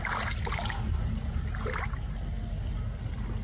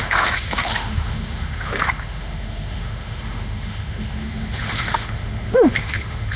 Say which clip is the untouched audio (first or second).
first